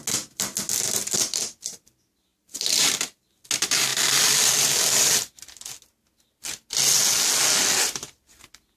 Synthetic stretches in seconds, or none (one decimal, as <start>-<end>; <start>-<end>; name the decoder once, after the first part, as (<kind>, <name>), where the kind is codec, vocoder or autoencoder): 2.3-2.9 (vocoder, BigVGAN v2)